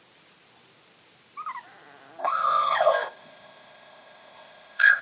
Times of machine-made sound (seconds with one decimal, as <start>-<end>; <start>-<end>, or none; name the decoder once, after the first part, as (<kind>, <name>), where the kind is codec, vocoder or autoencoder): 2.2-5.0 (codec, ZipCodec)